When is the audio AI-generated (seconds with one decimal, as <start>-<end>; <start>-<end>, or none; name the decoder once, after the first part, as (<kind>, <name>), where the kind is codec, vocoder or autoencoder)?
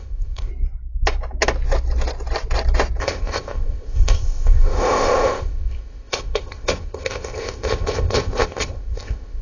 0.0-0.5 (codec, ZipCodec); 3.0-9.4